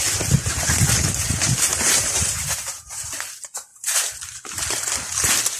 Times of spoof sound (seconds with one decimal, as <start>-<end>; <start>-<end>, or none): 1.7-3.1; 3.7-4.2